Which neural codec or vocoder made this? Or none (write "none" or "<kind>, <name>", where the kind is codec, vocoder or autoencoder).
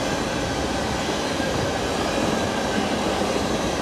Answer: none